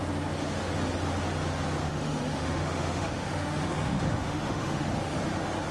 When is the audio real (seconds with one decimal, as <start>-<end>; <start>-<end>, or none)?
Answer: 0.0-1.8; 5.2-5.7